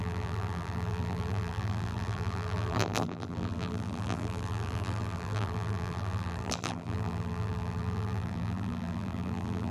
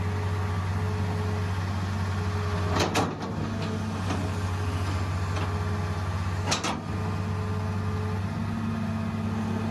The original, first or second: second